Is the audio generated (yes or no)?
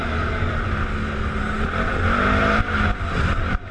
no